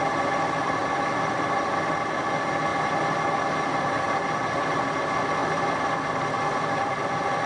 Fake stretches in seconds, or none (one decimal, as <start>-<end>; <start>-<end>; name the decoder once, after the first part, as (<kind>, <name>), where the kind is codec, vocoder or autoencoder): 0.8-1.9 (vocoder, BigVGAN v2); 2.7-4.9; 5.4-7.5